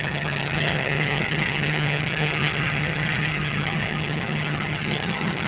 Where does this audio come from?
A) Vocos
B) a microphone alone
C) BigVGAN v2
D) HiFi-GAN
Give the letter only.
D